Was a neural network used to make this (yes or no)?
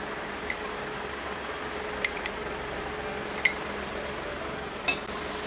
no